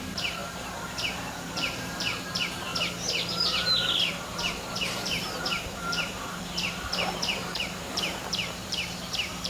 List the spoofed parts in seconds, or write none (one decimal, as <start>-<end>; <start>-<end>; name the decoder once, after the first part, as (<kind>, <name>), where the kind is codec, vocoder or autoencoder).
0.0-2.7 (vocoder, BigVGAN v2); 3.3-9.5